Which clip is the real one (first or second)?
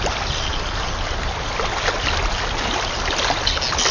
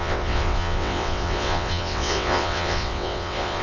first